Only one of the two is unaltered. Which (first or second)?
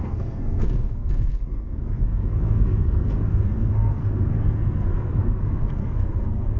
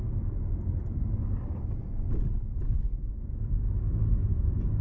second